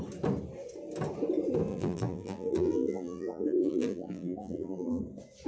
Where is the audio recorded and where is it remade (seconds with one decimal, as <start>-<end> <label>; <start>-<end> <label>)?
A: 0.0-1.7 recorded; 1.7-5.0 remade; 5.0-5.5 recorded

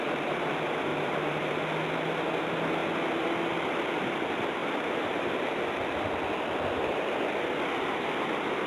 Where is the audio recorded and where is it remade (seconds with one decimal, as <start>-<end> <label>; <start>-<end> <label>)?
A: 0.0-0.9 recorded; 0.9-1.6 remade; 1.6-4.6 recorded; 4.6-5.6 remade; 5.6-8.7 recorded

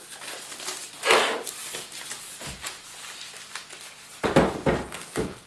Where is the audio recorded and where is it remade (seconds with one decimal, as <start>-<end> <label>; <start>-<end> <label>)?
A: 0.0-5.5 recorded

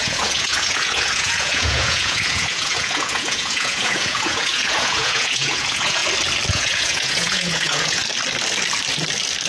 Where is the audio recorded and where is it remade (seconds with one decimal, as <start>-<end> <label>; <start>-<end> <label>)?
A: 0.0-6.0 remade; 6.0-6.5 recorded; 6.5-8.0 remade; 8.0-9.5 recorded

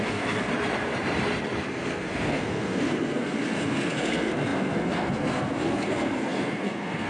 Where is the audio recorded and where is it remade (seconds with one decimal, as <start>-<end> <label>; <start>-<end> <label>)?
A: 0.0-0.5 remade; 0.5-1.7 recorded; 1.7-7.1 remade

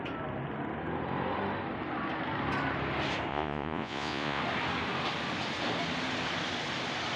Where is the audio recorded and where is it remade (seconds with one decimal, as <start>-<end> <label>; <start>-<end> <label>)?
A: 0.0-3.3 recorded; 3.3-4.4 remade; 4.4-7.2 recorded

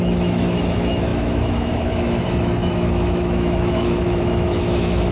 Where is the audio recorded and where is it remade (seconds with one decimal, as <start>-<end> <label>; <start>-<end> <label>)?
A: 0.0-5.1 remade